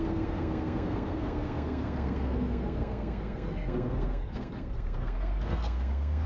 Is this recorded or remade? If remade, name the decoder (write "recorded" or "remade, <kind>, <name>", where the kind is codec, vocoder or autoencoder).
remade, codec, SNAC